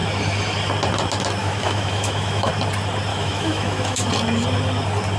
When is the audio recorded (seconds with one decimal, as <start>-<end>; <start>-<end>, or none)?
0.0-1.4; 2.5-3.1; 4.1-5.2